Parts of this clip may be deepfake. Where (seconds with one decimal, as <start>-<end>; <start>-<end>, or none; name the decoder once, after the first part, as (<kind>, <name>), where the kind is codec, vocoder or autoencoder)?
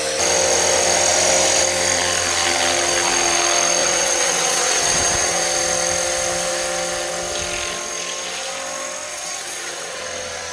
3.8-5.4 (vocoder, WaveNeXt); 9.1-10.0